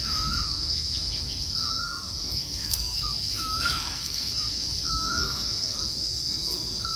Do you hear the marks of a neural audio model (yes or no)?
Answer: yes